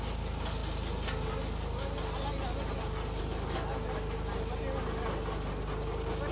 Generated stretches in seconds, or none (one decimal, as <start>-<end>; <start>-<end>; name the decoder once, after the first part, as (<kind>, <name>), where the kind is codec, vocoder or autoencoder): none